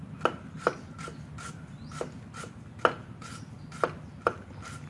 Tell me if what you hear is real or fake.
real